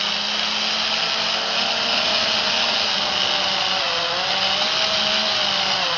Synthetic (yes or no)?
no